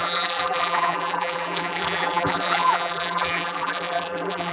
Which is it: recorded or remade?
remade